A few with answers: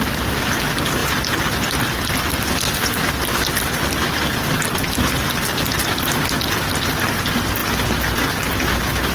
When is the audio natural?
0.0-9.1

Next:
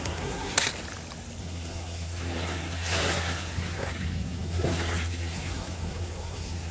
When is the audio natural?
0.7-1.4

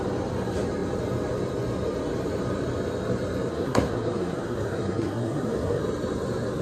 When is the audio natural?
0.0-3.5; 5.8-6.6